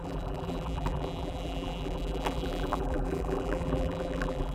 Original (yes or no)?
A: no